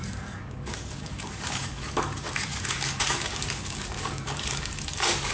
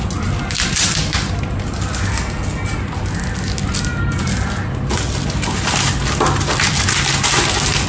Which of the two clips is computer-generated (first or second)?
first